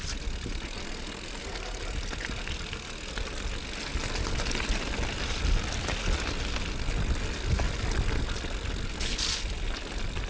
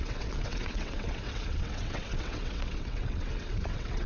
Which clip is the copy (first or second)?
second